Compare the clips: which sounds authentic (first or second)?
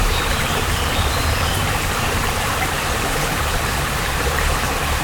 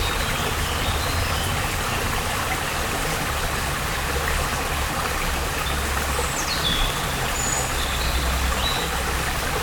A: second